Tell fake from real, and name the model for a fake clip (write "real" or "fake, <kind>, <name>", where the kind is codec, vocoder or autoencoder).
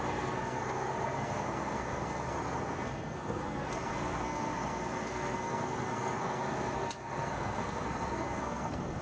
fake, codec, SNAC